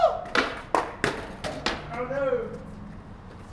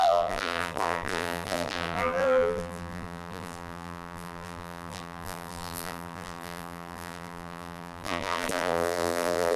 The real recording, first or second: first